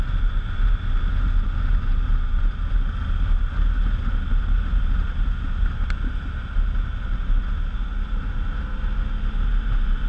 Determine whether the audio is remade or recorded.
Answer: recorded